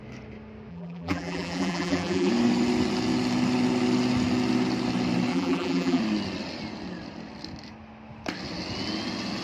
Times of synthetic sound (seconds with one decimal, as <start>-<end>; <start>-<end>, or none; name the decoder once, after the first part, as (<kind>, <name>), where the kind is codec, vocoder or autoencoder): 0.7-2.3 (vocoder, BigVGAN v2); 5.3-6.0